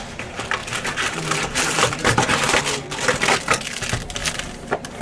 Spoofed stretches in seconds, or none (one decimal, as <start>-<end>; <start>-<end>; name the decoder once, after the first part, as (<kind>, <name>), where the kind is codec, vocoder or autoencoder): 0.6-2.6 (vocoder, BigVGAN v2)